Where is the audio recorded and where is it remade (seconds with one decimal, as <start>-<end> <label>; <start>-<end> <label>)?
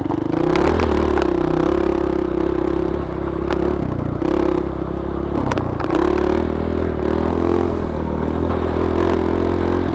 0.0-7.3 recorded; 7.3-8.5 remade; 8.5-9.9 recorded